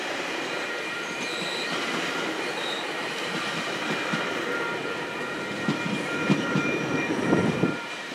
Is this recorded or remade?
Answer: remade